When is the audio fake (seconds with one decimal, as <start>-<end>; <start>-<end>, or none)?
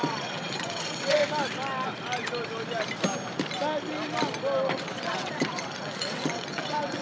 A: 0.0-1.2; 4.8-7.0